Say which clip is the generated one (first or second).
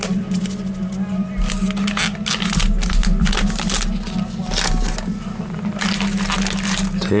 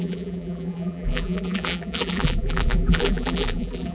second